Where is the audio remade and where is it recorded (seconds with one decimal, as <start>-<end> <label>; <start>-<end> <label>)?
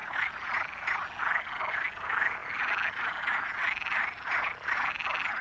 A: 0.0-5.4 recorded